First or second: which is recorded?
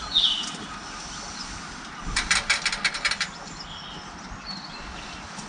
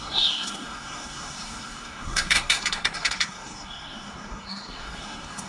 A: first